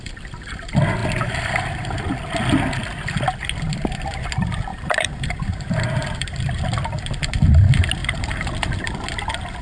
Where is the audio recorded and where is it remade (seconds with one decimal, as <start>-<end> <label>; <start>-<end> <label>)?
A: 0.0-4.7 recorded; 4.7-6.4 remade; 6.4-8.0 recorded; 8.0-8.5 remade; 8.5-9.6 recorded